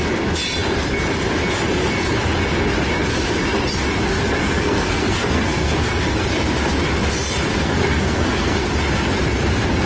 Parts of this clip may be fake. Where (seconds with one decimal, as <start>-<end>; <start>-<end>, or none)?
4.4-6.3; 7.5-8.7